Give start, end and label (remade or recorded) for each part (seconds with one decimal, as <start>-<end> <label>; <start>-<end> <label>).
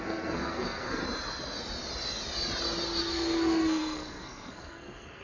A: 0.0-1.0 remade; 1.0-3.0 recorded; 3.0-5.2 remade